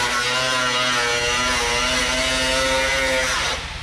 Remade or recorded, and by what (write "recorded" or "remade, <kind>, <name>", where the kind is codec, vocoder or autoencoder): recorded